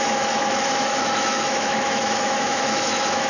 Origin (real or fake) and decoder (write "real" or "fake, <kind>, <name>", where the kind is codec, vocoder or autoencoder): fake, autoencoder, DAC-VAE